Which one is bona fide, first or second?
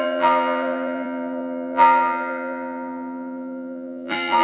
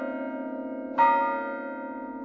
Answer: second